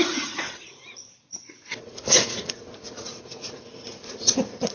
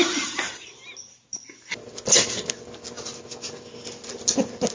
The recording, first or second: second